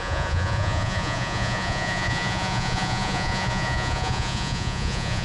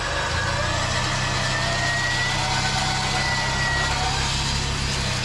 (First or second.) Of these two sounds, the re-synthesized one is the first